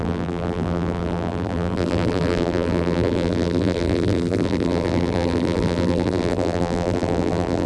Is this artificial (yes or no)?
yes